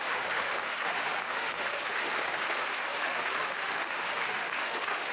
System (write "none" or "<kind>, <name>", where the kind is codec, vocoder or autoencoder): autoencoder, DAC-VAE